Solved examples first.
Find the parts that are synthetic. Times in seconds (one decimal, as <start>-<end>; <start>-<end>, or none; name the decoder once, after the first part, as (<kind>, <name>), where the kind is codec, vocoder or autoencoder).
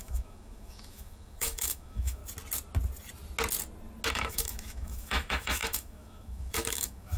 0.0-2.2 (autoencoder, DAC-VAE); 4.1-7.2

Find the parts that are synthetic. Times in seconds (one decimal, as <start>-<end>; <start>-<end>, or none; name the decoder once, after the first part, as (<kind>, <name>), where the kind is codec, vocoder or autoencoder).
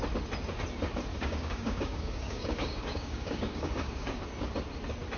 1.1-4.2 (codec, DAC)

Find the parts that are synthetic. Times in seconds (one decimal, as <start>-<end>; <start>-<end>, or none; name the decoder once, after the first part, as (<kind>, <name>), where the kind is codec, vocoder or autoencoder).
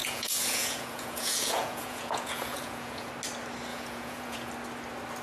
0.0-3.1 (vocoder, Vocos); 3.7-4.5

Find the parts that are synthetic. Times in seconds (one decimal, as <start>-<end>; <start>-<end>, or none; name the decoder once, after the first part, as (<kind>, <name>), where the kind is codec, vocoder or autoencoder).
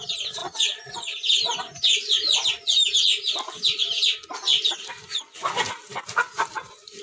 4.5-5.7 (vocoder, BigVGAN v2)